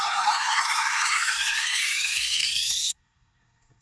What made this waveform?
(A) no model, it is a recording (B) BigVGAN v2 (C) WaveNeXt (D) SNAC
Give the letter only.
D